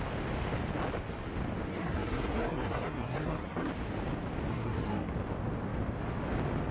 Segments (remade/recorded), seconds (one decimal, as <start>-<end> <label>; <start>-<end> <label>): 0.0-1.7 recorded; 1.7-3.7 remade; 3.7-4.5 recorded; 4.5-5.1 remade; 5.1-6.7 recorded